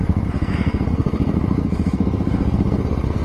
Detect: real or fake fake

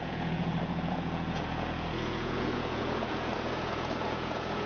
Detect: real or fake fake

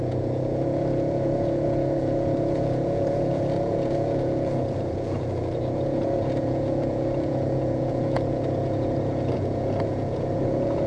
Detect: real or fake fake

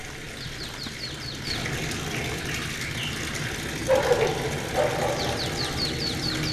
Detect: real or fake real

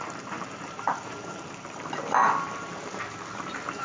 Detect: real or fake fake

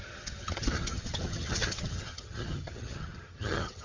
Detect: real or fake fake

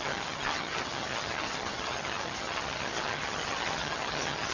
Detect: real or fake fake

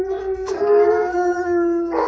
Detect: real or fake fake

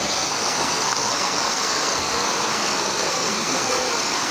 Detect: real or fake fake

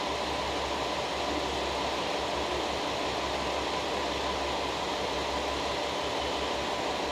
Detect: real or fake real